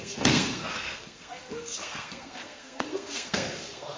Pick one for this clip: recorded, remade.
remade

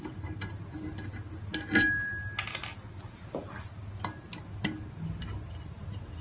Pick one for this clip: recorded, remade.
recorded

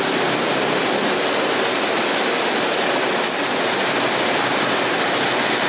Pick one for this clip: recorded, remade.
recorded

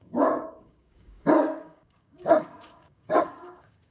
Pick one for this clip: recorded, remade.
remade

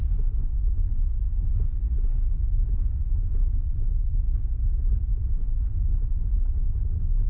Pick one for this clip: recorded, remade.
recorded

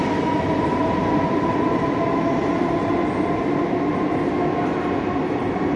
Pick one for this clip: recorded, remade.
recorded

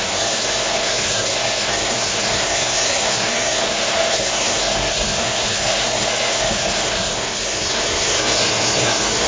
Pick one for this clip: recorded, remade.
remade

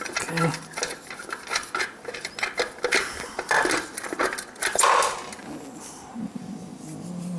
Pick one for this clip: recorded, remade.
recorded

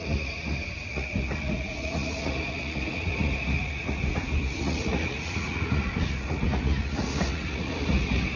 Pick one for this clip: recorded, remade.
remade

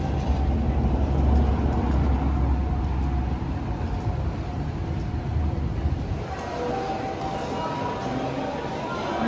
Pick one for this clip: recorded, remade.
recorded